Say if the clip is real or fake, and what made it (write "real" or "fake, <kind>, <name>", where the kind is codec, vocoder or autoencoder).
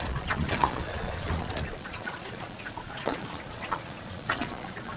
fake, vocoder, Vocos